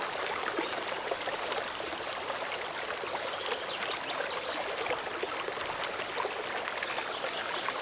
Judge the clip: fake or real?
real